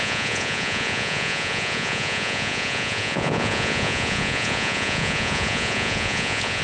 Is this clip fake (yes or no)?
yes